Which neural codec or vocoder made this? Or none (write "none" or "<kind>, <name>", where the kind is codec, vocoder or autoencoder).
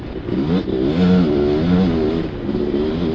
none